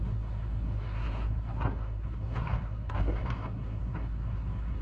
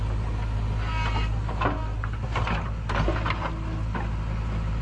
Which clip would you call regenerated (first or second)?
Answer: first